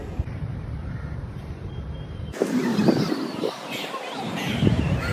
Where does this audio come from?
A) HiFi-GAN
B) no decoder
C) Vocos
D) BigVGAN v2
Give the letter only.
D